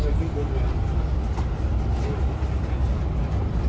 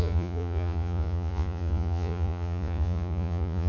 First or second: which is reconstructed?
second